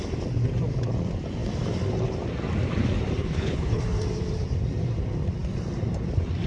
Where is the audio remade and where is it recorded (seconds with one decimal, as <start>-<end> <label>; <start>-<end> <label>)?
0.0-3.2 recorded; 3.2-3.8 remade; 3.8-6.5 recorded